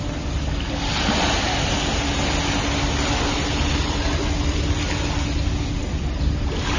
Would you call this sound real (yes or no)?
yes